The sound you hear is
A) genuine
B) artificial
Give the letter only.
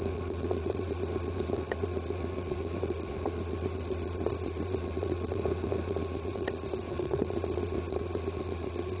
B